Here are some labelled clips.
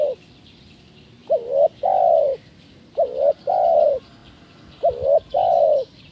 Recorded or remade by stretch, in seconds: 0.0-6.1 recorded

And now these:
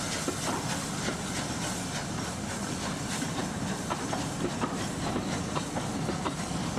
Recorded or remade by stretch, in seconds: 0.0-6.8 recorded

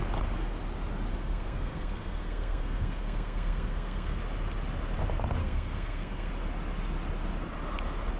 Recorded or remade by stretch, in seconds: 0.0-1.1 recorded; 1.1-4.2 remade; 4.2-5.4 recorded; 5.4-6.3 remade; 6.3-8.2 recorded

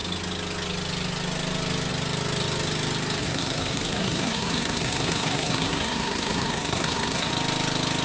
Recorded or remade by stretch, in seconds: 0.0-3.2 recorded; 3.2-7.3 remade; 7.3-8.0 recorded

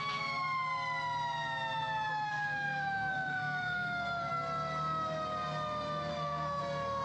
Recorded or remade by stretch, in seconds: 0.0-2.1 recorded; 2.1-4.3 remade; 4.3-6.1 recorded; 6.1-6.6 remade; 6.6-7.0 recorded